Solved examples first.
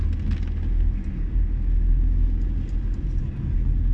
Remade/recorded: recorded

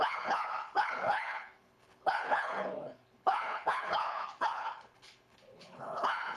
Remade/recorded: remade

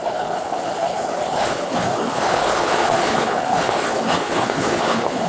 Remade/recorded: remade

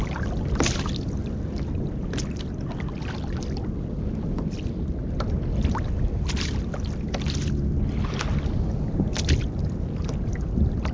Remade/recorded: recorded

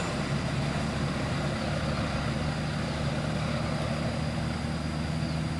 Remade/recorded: recorded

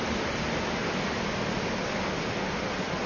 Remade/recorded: recorded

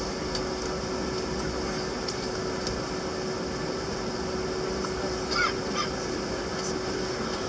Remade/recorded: recorded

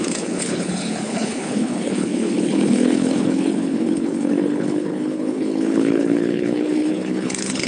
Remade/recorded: remade